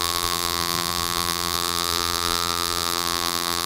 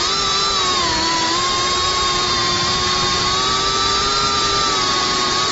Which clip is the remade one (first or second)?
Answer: first